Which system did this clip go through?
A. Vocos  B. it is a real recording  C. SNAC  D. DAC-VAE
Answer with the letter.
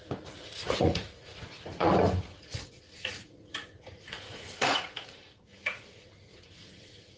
A